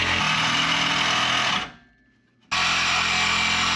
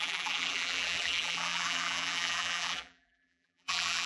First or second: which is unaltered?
first